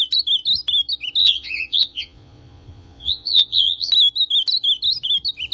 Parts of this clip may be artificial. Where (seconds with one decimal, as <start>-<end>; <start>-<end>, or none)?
1.2-3.9